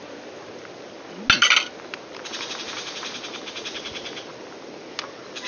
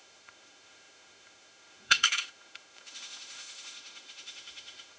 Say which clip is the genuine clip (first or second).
first